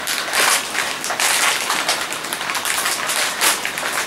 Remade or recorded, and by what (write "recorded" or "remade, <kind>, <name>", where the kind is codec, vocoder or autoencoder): recorded